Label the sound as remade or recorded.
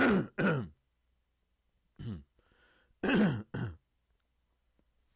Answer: recorded